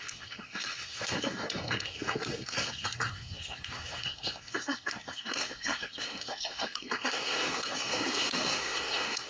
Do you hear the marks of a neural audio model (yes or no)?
yes